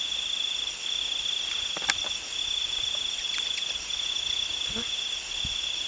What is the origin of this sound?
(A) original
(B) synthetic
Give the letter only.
A